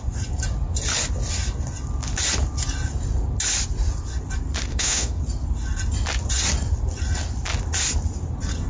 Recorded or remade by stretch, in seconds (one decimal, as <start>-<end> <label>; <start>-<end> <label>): 0.0-4.7 recorded; 4.7-5.2 remade; 5.2-8.7 recorded